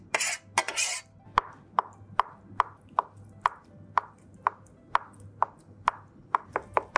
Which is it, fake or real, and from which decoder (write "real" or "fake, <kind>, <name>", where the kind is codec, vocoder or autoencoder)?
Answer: real